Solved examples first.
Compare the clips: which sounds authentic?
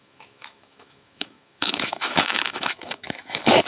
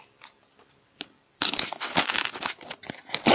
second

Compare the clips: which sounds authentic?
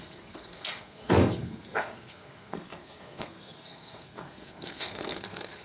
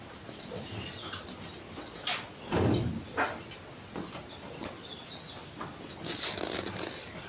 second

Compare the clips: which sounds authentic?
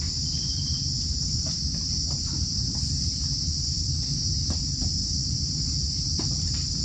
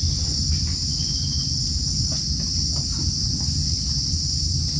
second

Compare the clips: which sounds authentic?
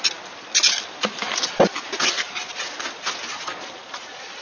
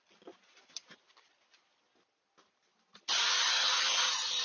first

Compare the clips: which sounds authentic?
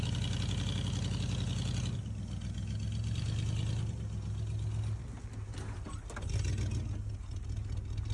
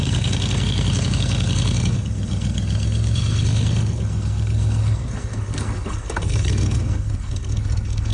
first